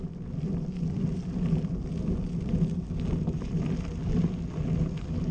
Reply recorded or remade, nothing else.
recorded